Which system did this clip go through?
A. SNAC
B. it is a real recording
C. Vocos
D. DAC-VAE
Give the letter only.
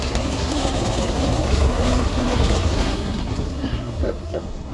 A